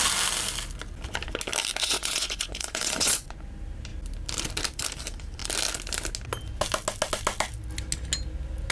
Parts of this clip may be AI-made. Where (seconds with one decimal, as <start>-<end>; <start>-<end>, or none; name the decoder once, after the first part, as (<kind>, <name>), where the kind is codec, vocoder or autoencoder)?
1.8-3.4 (vocoder, Vocos)